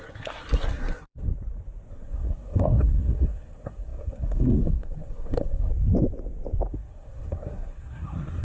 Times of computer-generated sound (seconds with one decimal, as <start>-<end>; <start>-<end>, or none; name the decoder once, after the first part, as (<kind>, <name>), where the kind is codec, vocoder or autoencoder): 0.0-1.3 (codec, SNAC); 1.9-5.7; 6.7-8.4